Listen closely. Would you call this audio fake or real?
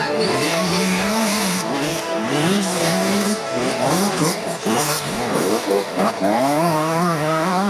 fake